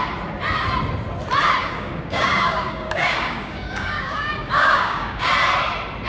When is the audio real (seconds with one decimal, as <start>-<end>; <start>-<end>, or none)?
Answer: 0.0-1.6; 5.3-6.1